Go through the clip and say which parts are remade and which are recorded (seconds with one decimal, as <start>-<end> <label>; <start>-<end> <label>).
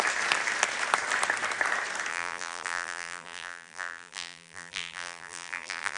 0.0-2.1 recorded; 2.1-6.0 remade